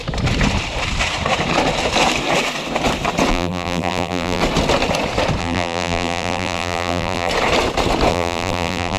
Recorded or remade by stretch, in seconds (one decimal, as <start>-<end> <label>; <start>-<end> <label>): 0.0-3.3 recorded; 3.3-4.4 remade; 4.4-5.4 recorded; 5.4-7.3 remade; 7.3-8.1 recorded; 8.1-9.0 remade